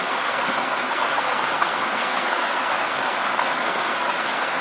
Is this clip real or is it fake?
fake